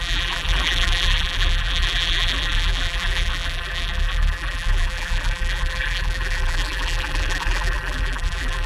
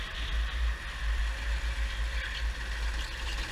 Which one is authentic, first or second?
second